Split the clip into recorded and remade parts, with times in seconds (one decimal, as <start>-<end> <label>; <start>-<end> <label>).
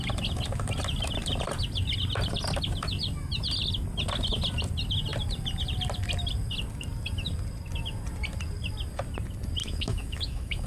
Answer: 0.0-9.6 recorded; 9.6-10.7 remade